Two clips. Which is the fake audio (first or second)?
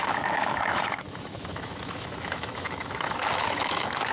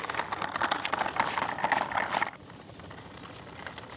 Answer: first